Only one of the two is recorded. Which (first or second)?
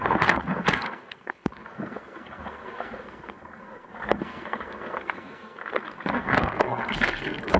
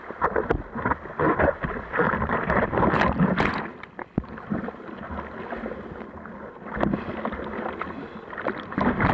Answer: second